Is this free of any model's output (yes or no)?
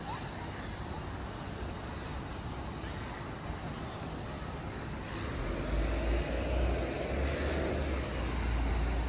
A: yes